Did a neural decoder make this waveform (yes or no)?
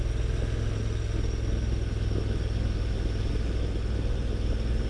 no